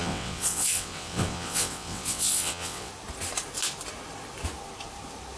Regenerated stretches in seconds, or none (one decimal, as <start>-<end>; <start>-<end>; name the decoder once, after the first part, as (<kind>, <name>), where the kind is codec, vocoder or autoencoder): 0.0-2.9 (vocoder, WaveNeXt)